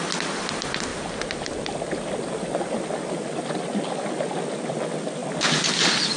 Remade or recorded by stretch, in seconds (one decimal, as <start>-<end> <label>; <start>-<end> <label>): 0.0-0.9 recorded; 0.9-3.8 remade; 3.8-6.2 recorded